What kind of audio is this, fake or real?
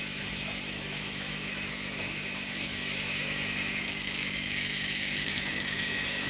fake